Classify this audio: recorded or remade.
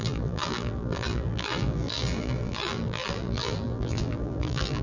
remade